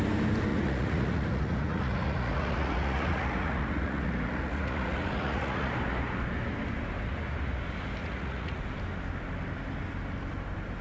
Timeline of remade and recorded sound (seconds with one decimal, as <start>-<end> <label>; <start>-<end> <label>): 0.0-0.5 recorded; 0.5-5.7 remade; 5.7-8.0 recorded; 8.0-8.6 remade; 8.6-10.8 recorded